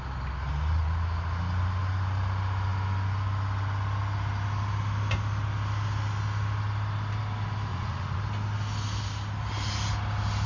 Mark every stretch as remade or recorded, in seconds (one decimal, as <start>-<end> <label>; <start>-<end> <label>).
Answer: 0.0-7.7 recorded; 7.7-8.2 remade; 8.2-10.5 recorded